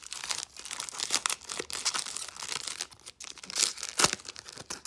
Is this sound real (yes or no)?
yes